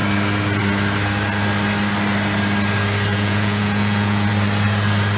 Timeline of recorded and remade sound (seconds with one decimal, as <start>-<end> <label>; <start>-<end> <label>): 0.0-3.1 recorded; 3.1-4.3 remade; 4.3-5.2 recorded